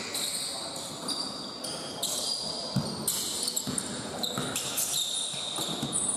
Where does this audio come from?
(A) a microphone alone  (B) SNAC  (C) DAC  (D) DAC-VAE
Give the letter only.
A